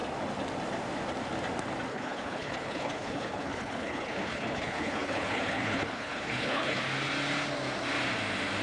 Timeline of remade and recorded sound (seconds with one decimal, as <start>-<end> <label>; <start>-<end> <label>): 0.0-1.9 recorded; 1.9-6.8 remade; 6.8-8.6 recorded